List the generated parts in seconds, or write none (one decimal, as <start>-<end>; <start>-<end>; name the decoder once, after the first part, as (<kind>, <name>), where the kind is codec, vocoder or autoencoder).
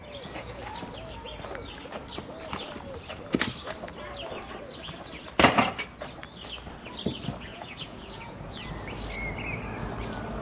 0.0-0.6 (vocoder, Vocos); 7.5-8.7